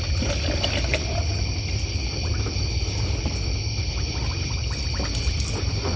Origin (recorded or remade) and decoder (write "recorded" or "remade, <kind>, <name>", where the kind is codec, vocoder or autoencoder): recorded